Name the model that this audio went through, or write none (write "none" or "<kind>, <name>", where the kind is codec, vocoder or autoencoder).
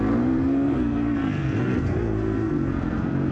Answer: codec, SNAC